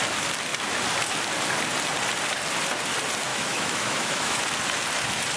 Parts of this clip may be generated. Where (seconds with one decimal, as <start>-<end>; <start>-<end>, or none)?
3.3-4.4